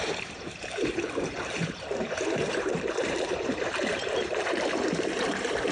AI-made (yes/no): yes